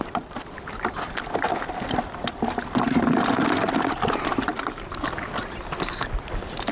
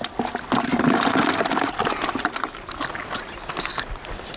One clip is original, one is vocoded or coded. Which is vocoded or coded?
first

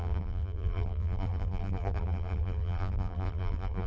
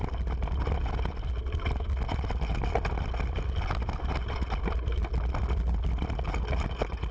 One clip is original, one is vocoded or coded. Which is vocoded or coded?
first